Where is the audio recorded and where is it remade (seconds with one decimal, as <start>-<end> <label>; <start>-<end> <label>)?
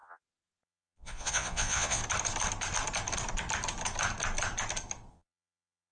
0.0-2.0 remade; 2.0-5.1 recorded; 5.1-5.9 remade